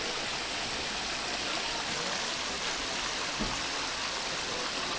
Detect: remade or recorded recorded